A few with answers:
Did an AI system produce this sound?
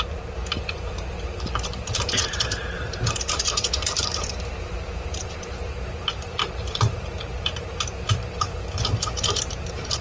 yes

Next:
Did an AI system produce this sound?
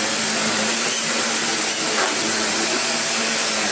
no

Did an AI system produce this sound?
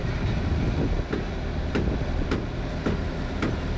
no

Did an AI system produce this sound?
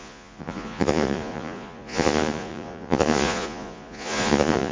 yes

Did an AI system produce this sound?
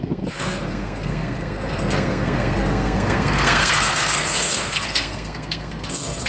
yes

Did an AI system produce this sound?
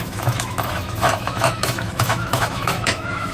yes